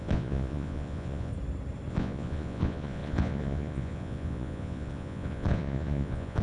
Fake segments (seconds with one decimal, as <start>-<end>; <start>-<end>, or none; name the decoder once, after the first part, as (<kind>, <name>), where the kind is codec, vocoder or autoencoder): 0.0-1.3 (vocoder, Vocos); 1.9-6.4